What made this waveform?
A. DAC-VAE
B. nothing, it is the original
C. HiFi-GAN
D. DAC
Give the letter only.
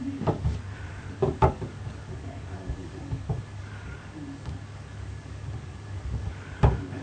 D